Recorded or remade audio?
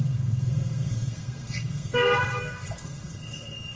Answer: remade